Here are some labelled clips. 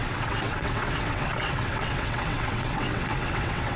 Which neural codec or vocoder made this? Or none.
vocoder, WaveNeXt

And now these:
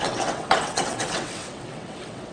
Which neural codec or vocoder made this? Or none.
vocoder, WaveNeXt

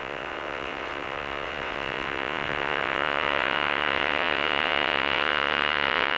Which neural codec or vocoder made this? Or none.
vocoder, WaveNeXt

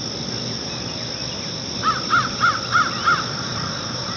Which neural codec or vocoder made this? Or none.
none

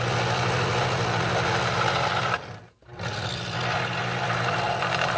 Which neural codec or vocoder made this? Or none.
none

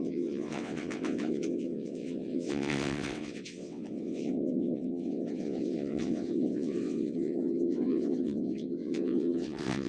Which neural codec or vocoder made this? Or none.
vocoder, WaveNeXt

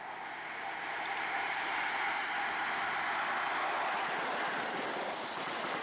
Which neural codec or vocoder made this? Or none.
none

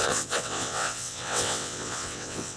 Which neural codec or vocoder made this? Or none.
vocoder, WaveNeXt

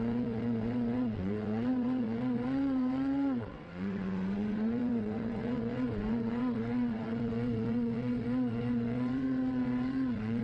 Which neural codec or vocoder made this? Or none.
vocoder, WaveNeXt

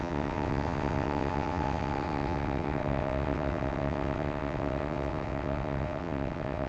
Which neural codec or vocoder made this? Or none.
vocoder, WaveNeXt